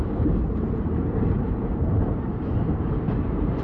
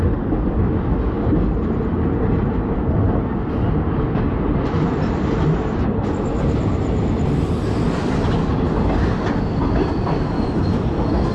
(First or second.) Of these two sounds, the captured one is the second